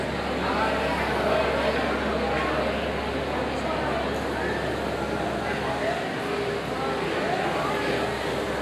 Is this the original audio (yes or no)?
yes